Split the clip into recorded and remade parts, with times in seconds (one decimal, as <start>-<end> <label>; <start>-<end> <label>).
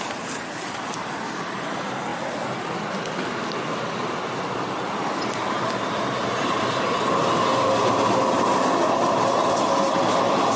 0.0-10.6 recorded